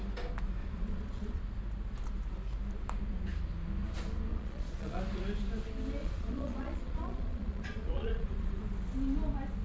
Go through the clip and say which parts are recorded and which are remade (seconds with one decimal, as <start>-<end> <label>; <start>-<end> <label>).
0.0-0.6 recorded; 0.6-1.4 remade; 1.4-4.3 recorded; 4.3-5.0 remade; 5.0-6.0 recorded; 6.0-8.6 remade; 8.6-9.6 recorded